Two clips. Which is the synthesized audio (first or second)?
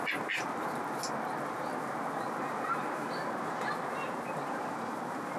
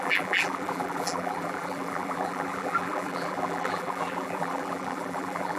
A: second